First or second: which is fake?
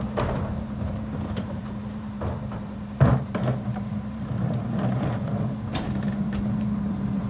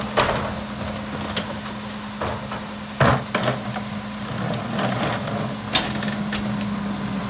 first